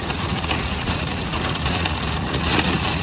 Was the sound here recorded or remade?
remade